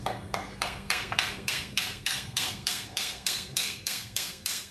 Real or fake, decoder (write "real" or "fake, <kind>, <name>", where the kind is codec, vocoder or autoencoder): fake, codec, SNAC